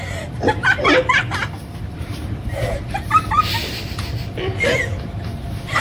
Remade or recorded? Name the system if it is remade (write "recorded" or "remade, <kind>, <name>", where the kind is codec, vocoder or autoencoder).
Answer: remade, vocoder, BigVGAN v2